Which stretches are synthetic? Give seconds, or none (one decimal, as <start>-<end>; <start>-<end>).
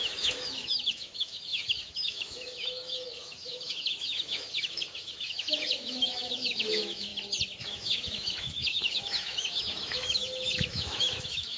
0.0-7.1; 7.6-11.6